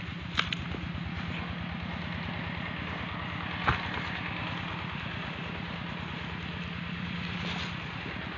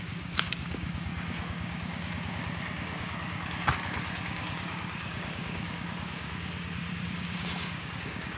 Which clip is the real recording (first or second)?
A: first